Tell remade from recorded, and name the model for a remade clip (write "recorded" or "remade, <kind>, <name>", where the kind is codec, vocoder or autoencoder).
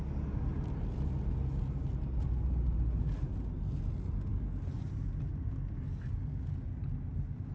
recorded